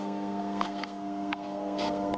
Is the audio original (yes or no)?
no